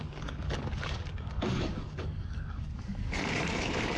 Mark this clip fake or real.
fake